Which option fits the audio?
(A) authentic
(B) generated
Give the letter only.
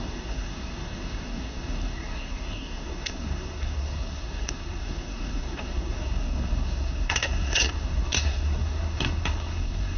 B